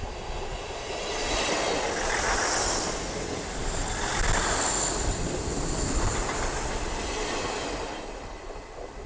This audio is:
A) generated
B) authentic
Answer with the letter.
B